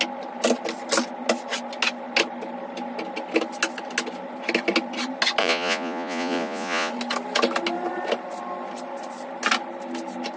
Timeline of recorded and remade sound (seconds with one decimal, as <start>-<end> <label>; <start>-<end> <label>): 0.0-5.4 recorded; 5.4-6.9 remade; 6.9-10.4 recorded